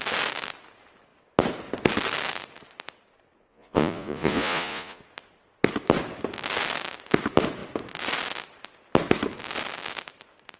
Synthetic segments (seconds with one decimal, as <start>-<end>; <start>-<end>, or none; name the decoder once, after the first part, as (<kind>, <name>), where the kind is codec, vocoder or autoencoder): 3.5-5.0 (vocoder, Vocos)